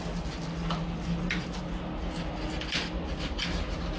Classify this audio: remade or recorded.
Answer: recorded